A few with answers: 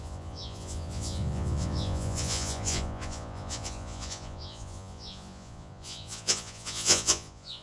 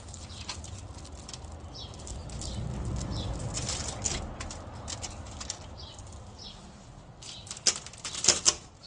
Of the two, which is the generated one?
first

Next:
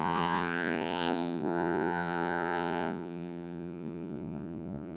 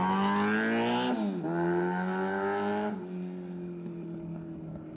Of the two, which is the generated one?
first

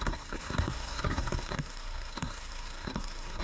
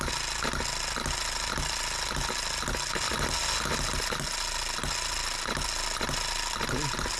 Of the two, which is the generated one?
first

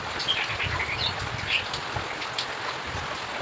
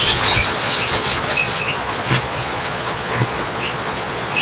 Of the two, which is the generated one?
second